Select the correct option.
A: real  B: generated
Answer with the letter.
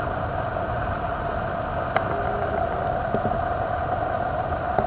A